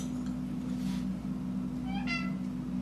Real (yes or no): yes